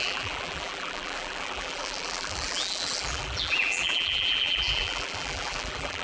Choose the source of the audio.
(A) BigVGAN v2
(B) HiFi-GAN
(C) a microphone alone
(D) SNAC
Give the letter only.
A